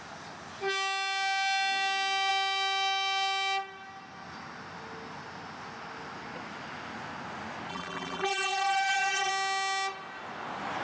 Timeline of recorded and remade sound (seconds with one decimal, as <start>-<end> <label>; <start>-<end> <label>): 0.0-7.7 recorded; 7.7-9.3 remade; 9.3-10.8 recorded